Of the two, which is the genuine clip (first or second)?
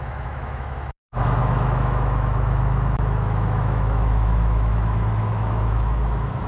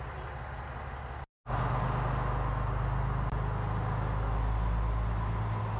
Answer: second